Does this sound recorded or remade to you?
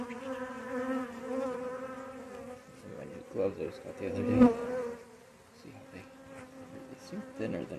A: recorded